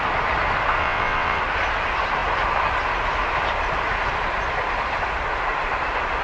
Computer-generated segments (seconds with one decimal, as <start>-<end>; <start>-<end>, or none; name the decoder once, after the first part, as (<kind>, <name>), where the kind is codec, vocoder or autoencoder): 0.8-1.4 (vocoder, WaveNeXt)